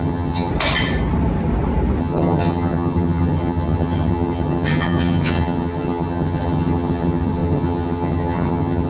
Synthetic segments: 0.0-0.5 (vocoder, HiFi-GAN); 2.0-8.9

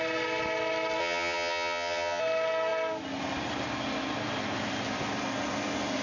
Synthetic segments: 1.0-2.2 (vocoder, HiFi-GAN)